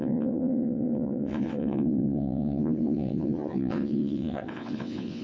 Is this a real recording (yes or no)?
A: no